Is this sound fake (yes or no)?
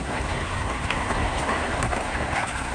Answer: yes